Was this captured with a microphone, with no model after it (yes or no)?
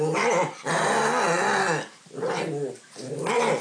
yes